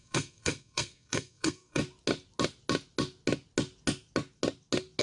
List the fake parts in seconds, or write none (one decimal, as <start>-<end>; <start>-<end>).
0.0-1.8